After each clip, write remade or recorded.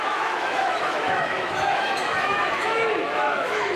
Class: remade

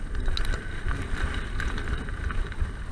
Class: recorded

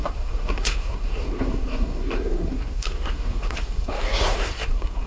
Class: remade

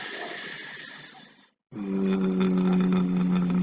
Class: recorded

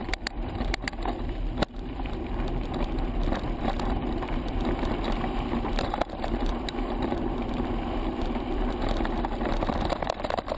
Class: remade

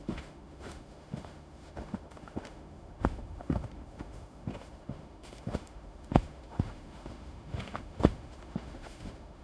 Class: remade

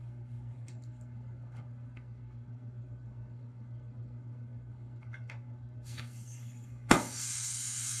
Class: remade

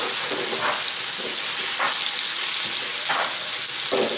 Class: recorded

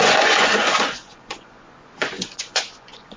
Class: remade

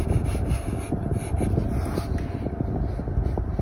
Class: recorded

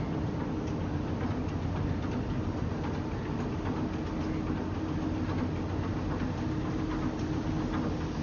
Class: recorded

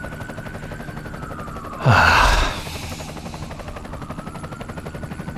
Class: recorded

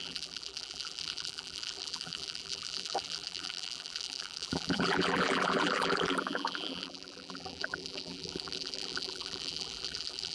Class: remade